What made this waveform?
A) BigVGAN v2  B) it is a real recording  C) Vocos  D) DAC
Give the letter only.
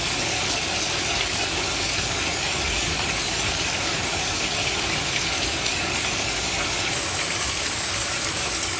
D